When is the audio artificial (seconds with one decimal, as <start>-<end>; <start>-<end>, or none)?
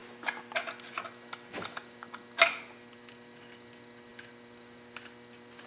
none